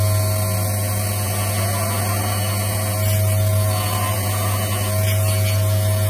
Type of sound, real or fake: real